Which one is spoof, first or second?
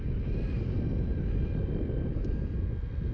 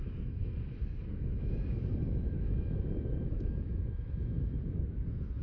second